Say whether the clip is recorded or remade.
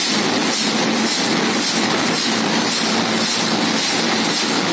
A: recorded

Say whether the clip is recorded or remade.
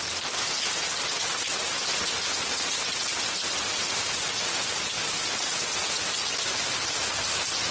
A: recorded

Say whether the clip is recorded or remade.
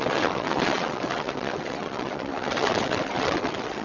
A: remade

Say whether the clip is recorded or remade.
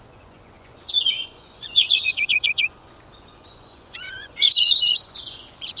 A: remade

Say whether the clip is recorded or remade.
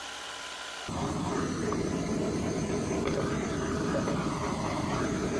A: recorded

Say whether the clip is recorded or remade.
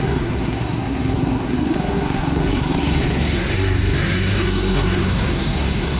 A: remade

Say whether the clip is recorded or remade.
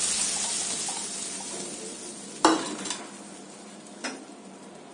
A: recorded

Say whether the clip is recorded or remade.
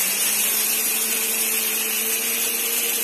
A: recorded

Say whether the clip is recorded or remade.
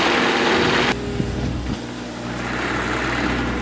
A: recorded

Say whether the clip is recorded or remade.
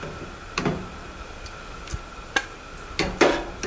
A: recorded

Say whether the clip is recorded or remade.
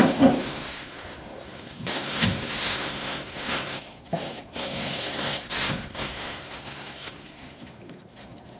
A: remade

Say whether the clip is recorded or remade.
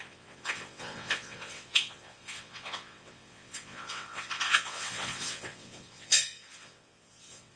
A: remade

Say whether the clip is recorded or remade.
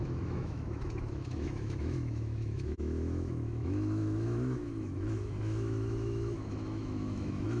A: remade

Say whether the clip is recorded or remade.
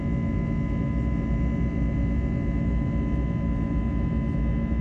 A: recorded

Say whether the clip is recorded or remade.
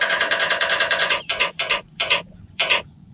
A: remade